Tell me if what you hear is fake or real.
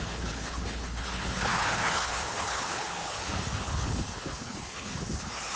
fake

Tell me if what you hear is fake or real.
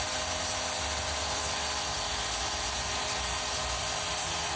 real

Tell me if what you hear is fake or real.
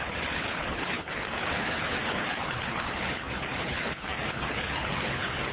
fake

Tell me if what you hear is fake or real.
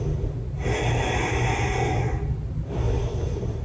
real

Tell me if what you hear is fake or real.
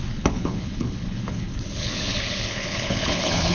fake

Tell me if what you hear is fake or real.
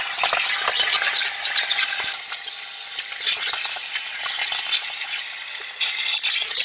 real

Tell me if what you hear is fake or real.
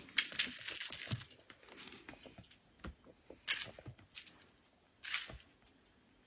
real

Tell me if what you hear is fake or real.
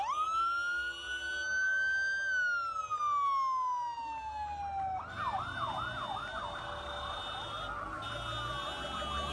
real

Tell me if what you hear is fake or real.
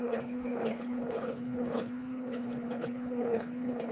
fake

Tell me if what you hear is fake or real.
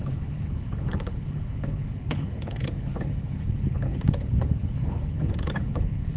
fake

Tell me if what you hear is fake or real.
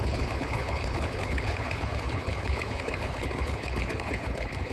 fake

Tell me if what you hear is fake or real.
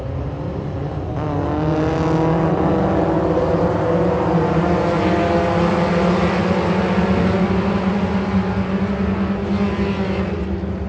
real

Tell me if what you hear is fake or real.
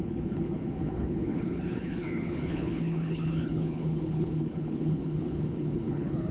fake